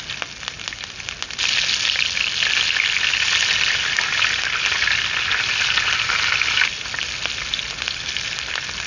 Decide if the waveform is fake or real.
real